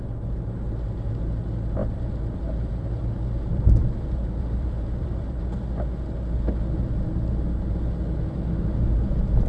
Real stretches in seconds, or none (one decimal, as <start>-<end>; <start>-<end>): 0.0-1.8; 5.4-9.5